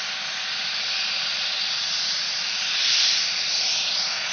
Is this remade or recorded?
recorded